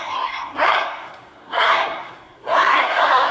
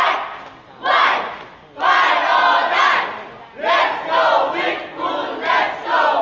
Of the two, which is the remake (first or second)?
first